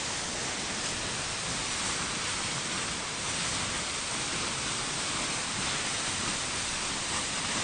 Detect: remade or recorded recorded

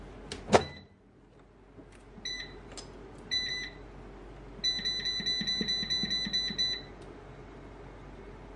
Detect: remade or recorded recorded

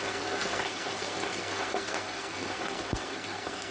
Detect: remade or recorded remade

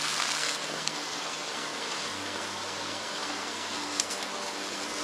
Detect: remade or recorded remade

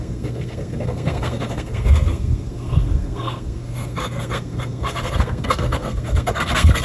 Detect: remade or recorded remade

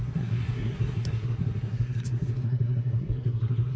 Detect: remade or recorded remade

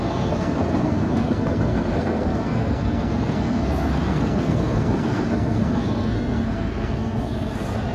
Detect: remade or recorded remade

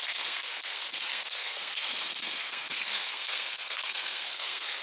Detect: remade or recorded remade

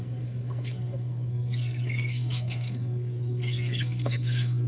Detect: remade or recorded remade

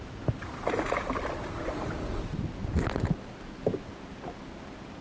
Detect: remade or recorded recorded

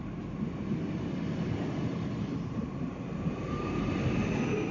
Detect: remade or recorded recorded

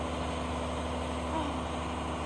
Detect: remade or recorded recorded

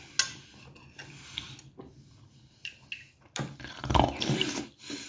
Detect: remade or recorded recorded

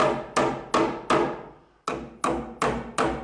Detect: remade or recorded recorded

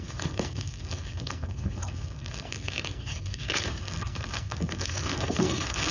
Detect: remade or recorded remade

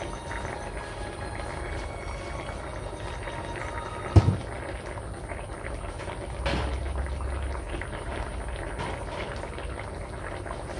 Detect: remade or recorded recorded